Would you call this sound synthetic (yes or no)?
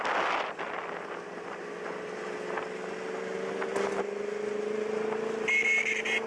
no